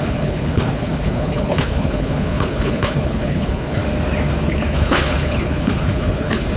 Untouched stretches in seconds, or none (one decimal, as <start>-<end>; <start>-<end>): 3.8-4.4